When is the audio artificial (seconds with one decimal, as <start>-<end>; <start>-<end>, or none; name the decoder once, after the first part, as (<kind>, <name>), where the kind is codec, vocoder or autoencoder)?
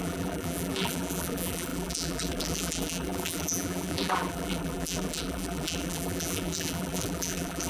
0.0-7.7 (vocoder, BigVGAN v2)